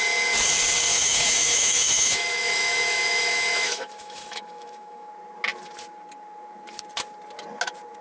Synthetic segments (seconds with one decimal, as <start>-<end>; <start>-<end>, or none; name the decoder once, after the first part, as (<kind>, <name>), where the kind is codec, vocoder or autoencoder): 0.9-5.1 (autoencoder, DAC-VAE)